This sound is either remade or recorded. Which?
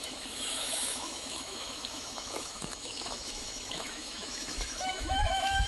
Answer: remade